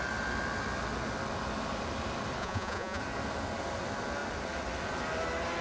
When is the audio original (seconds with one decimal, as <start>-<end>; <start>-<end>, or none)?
0.0-2.4; 3.0-5.6